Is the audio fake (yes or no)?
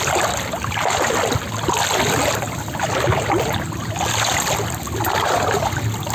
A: no